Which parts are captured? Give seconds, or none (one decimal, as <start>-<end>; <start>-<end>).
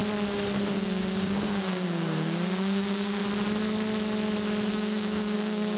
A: 0.0-0.7; 3.2-4.7